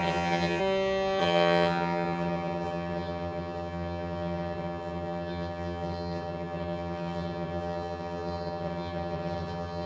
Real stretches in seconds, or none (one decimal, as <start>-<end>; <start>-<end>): 0.6-1.2